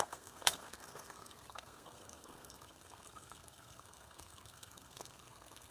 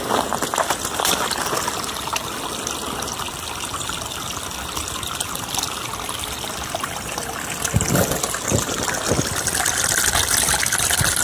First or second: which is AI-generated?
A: first